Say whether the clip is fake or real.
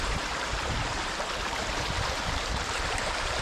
fake